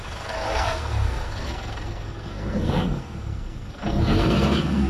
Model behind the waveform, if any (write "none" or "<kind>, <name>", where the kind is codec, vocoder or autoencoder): codec, SNAC